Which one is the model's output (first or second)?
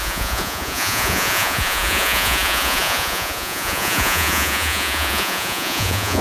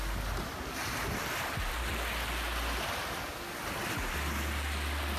first